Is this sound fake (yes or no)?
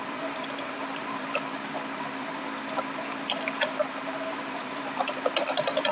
yes